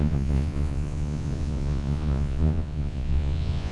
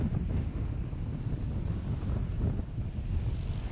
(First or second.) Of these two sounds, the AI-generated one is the first